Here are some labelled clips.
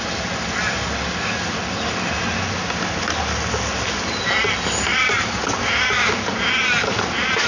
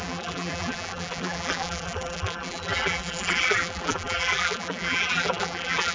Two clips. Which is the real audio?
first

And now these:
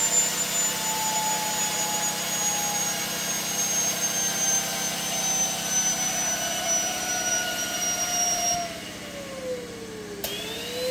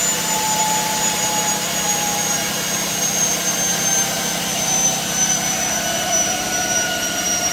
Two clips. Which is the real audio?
first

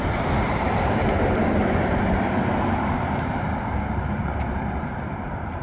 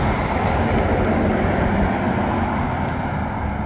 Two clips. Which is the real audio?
second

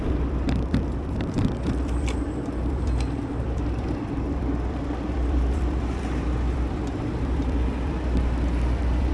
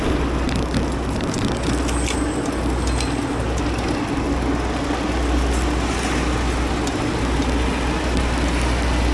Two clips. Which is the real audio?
second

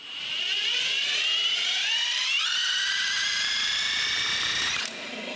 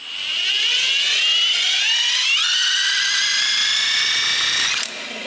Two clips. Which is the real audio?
second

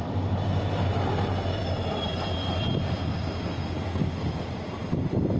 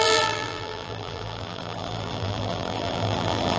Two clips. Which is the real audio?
first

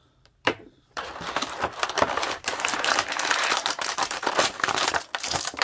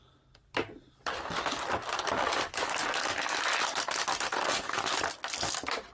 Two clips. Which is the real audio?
second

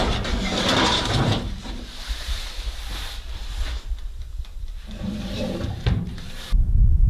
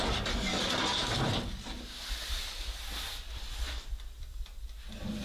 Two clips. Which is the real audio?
second